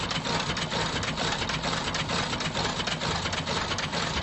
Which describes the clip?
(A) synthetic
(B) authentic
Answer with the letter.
B